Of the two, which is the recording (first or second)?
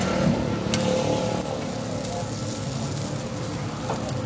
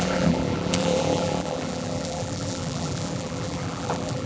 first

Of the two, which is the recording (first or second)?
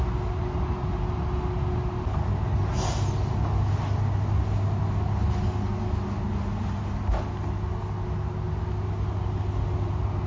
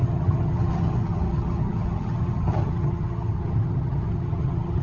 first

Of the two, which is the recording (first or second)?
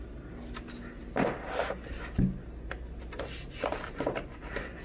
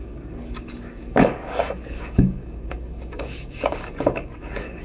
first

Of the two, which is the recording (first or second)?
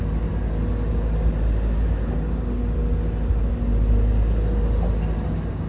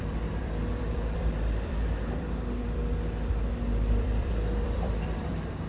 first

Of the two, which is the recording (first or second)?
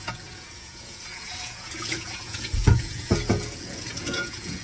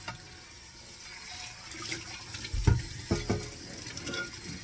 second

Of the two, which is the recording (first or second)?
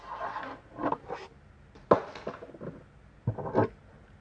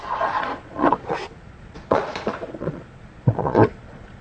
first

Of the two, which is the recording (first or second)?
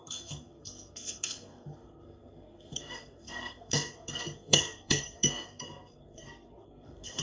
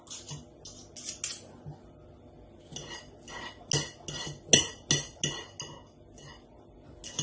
second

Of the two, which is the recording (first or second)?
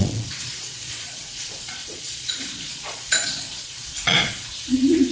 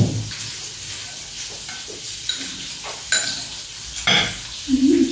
second